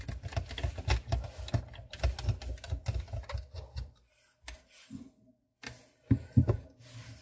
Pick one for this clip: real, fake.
real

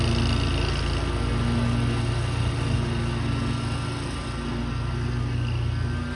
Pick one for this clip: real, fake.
real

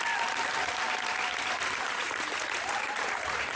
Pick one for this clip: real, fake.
fake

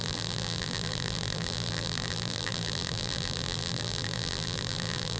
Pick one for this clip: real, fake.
fake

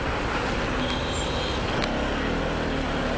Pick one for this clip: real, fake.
real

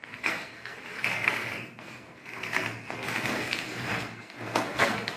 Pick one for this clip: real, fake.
fake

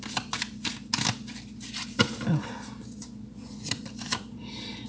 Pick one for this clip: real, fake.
real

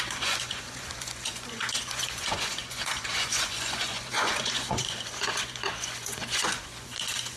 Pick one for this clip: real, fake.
fake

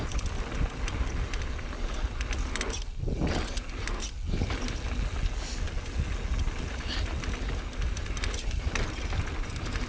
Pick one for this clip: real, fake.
real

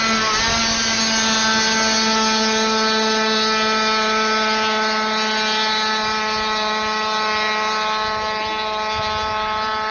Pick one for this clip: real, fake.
real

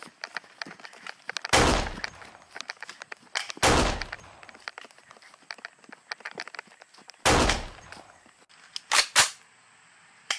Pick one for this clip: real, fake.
real